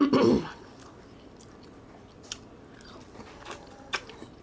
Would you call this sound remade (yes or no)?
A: yes